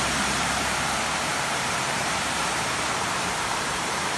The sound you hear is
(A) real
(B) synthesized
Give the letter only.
B